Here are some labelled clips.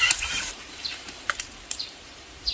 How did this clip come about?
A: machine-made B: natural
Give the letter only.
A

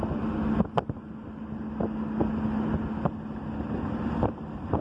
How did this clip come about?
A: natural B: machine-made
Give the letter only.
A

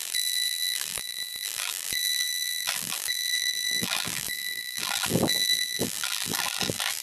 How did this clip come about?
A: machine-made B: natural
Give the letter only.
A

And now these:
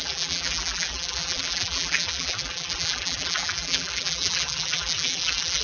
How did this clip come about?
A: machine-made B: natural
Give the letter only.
A